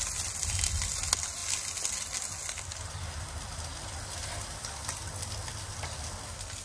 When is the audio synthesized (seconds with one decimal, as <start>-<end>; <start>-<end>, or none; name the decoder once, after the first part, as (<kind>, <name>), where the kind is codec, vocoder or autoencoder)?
none